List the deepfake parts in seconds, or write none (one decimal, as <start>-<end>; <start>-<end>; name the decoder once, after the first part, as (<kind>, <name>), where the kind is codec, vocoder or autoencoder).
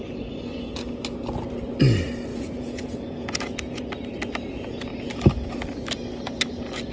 2.3-3.8 (vocoder, Vocos)